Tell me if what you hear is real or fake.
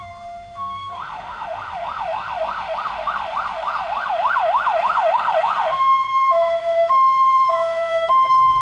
fake